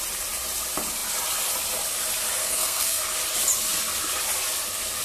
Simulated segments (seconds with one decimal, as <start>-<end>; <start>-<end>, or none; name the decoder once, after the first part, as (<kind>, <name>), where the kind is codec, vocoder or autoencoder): 2.4-3.0 (codec, SNAC)